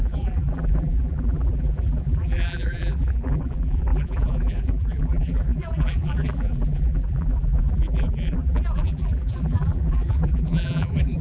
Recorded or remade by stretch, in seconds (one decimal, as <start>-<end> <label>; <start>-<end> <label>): 0.0-11.2 remade